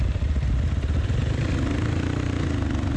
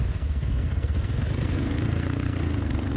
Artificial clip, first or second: second